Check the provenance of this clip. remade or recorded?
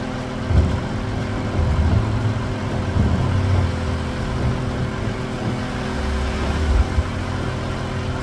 recorded